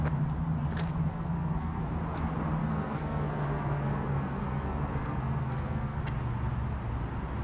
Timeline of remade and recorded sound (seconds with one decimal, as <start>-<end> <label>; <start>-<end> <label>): 0.0-1.1 recorded; 1.1-1.8 remade; 1.8-2.6 recorded; 2.6-6.0 remade; 6.0-7.4 recorded